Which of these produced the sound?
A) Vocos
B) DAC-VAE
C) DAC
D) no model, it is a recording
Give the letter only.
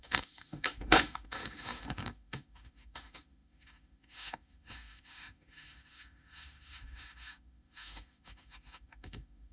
B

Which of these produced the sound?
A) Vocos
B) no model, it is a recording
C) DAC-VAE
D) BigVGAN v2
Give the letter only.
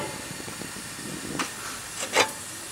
B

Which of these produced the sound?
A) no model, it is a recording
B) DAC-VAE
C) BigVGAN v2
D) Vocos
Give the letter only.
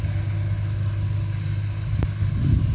A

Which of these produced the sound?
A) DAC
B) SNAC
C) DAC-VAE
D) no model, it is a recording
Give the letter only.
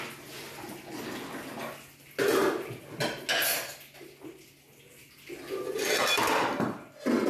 D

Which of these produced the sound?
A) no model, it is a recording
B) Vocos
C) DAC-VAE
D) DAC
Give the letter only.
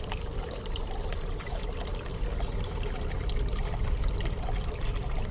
A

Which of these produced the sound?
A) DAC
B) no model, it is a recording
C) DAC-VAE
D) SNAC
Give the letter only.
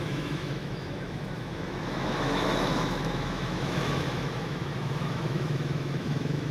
C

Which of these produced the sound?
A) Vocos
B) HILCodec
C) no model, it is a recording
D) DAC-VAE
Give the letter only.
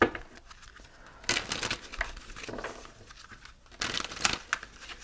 C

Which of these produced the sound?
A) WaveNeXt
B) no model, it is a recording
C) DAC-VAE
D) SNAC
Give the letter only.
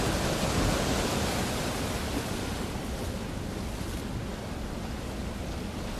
B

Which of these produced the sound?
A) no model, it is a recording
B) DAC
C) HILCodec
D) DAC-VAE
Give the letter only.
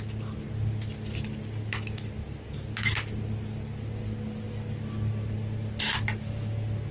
A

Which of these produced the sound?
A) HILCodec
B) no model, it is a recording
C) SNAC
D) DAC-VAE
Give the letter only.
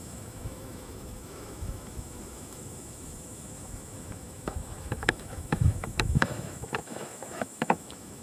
D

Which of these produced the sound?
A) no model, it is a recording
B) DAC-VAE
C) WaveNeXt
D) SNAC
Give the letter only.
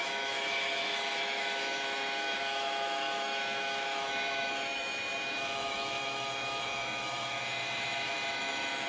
B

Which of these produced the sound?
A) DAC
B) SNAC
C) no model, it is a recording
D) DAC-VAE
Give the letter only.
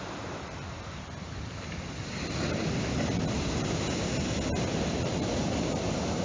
C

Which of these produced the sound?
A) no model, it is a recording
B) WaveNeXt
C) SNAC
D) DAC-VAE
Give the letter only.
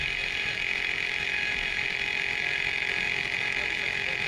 D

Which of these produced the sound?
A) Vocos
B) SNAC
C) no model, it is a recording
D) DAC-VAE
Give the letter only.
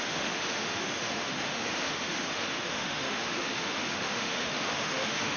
D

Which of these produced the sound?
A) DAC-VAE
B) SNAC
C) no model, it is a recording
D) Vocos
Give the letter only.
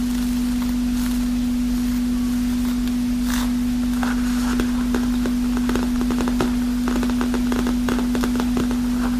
C